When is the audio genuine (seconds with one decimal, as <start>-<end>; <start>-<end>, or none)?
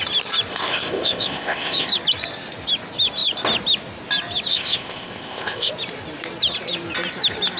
0.0-0.5; 1.9-4.5; 5.7-7.6